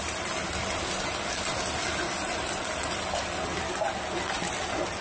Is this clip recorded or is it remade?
recorded